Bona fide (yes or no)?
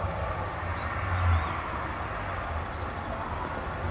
yes